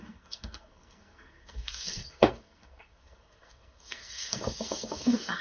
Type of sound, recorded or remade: remade